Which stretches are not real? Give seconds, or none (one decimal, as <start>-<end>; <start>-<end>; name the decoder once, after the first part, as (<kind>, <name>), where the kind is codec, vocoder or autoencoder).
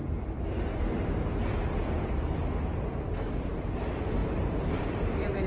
3.3-4.2 (vocoder, BigVGAN v2); 4.8-5.5